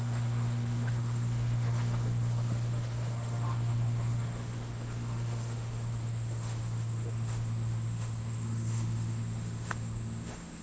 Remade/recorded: remade